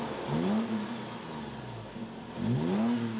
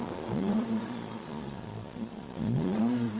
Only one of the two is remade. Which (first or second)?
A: second